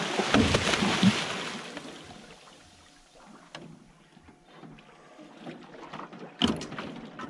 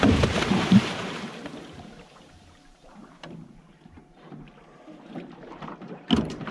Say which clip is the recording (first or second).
first